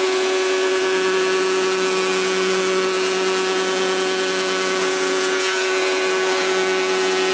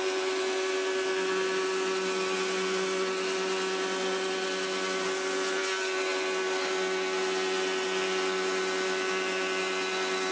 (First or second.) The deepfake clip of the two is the first